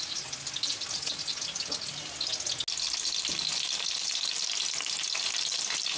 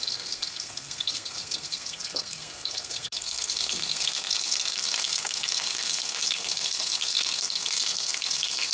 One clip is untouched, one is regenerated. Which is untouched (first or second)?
first